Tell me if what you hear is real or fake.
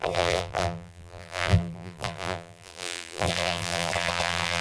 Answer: fake